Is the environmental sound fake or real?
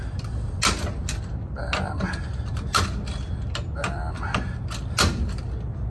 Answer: real